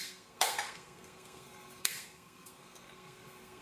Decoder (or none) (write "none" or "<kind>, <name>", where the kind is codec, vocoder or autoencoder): codec, SNAC